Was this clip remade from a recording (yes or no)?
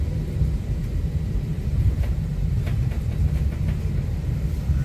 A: yes